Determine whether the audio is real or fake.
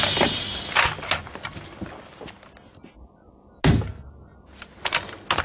real